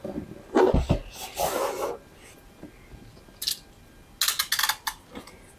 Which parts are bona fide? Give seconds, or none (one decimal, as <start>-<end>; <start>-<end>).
0.0-5.6